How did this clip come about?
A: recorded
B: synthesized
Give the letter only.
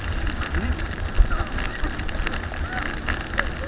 A